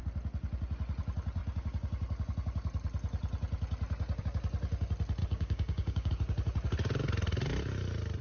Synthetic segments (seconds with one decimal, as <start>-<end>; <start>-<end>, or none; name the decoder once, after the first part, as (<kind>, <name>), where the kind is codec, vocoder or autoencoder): 5.2-6.1 (codec, DAC)